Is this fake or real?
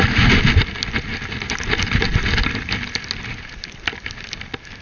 real